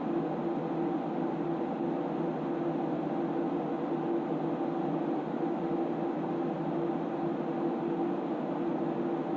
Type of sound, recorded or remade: recorded